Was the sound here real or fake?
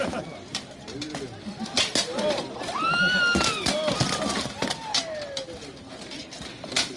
real